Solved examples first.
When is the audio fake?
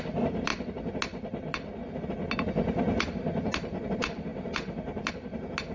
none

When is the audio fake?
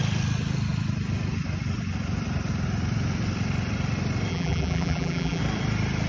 4.3-5.4 (vocoder, BigVGAN v2)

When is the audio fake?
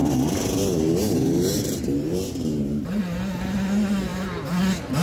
0.0-3.0 (vocoder, BigVGAN v2); 4.1-4.6